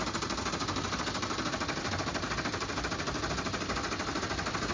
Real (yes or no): yes